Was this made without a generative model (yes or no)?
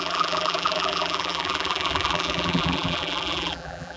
no